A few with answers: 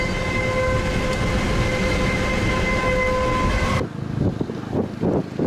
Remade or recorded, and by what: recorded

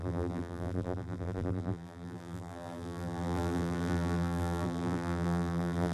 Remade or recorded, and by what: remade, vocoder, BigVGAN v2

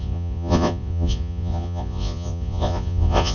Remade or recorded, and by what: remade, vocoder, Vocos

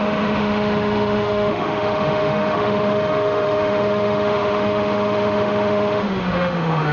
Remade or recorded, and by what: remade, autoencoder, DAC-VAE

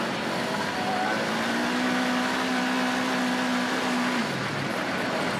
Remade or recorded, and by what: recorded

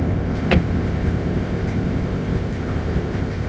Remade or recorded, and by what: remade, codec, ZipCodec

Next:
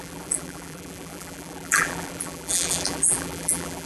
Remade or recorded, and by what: remade, vocoder, BigVGAN v2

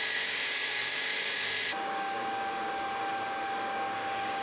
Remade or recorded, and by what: remade, codec, DAC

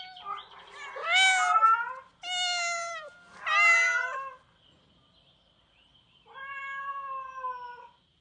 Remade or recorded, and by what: recorded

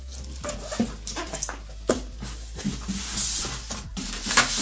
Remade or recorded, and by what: recorded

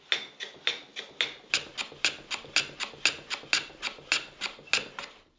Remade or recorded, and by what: recorded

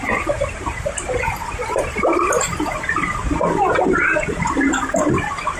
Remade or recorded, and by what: remade, vocoder, BigVGAN v2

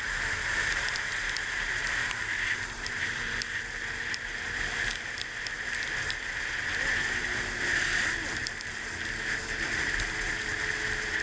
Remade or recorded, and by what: recorded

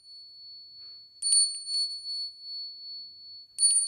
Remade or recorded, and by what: recorded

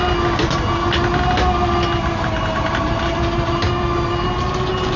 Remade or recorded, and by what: recorded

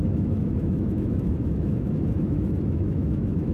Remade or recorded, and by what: remade, autoencoder, DAC-VAE